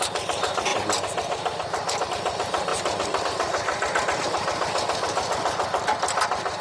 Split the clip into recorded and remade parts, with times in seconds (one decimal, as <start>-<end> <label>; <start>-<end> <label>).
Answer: 0.0-6.6 recorded

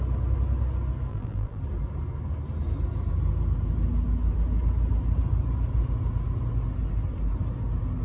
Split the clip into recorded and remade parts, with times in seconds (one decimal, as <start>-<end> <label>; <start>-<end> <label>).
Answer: 0.0-1.1 recorded; 1.1-1.6 remade; 1.6-8.0 recorded

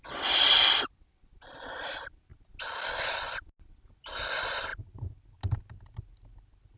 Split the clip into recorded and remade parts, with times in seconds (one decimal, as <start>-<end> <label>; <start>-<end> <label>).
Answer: 0.0-6.8 recorded

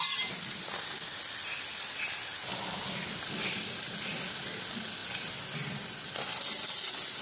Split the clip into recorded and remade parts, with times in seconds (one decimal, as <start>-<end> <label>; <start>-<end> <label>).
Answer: 0.0-7.2 recorded

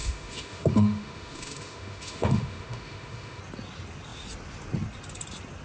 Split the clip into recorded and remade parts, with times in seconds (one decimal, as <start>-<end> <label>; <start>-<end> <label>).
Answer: 0.0-3.4 remade; 3.4-5.6 recorded